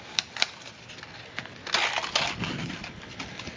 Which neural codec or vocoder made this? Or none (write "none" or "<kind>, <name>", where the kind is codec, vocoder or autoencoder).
none